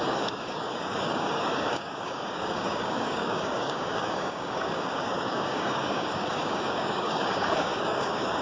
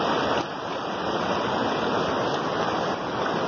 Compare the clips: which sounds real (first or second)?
second